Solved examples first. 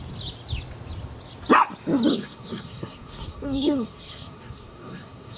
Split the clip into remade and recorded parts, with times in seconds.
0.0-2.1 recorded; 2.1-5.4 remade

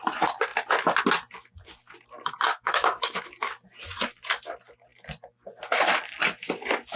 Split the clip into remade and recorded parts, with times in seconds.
0.0-2.5 recorded; 2.5-3.3 remade; 3.3-7.0 recorded

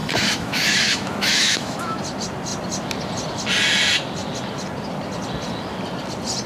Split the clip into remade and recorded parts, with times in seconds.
0.0-2.0 remade; 2.0-6.5 recorded

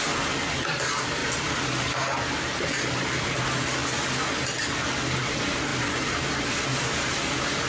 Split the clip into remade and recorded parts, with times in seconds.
0.0-1.2 recorded; 1.2-3.4 remade; 3.4-5.7 recorded; 5.7-6.3 remade; 6.3-7.7 recorded

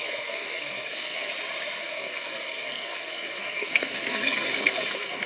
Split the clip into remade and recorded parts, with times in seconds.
0.0-1.3 remade; 1.3-1.8 recorded; 1.8-5.3 remade